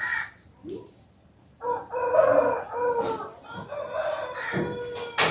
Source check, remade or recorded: recorded